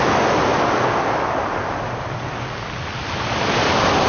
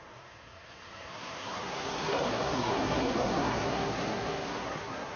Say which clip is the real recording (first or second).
first